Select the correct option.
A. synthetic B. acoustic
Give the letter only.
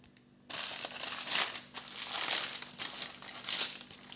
B